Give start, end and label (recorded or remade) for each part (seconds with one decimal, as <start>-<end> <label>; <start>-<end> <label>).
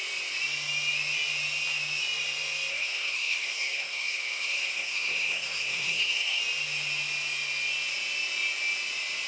0.0-2.7 recorded; 2.7-6.4 remade; 6.4-9.3 recorded